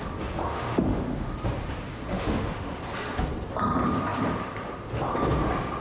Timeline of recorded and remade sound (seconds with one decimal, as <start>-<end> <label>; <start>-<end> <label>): 0.0-0.4 recorded; 0.4-1.3 remade; 1.3-2.1 recorded; 2.1-2.8 remade; 2.8-5.8 recorded